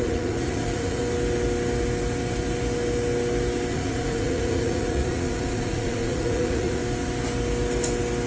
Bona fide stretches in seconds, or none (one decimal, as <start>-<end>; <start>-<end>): 1.0-3.7; 6.8-8.3